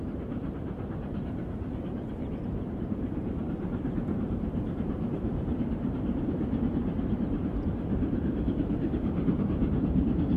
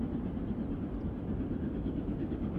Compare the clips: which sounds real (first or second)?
second